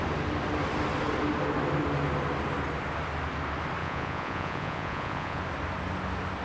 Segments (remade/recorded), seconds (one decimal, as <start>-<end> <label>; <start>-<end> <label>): 0.0-3.8 recorded; 3.8-5.4 remade; 5.4-6.4 recorded